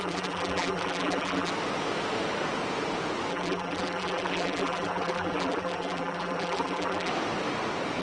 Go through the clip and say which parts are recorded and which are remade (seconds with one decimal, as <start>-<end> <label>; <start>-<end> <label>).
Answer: 0.0-1.5 remade; 1.5-3.3 recorded; 3.3-7.1 remade; 7.1-8.0 recorded